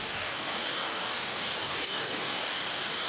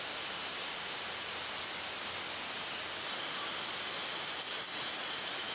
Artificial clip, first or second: first